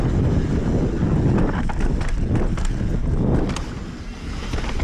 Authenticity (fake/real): real